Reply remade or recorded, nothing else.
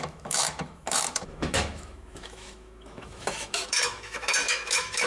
remade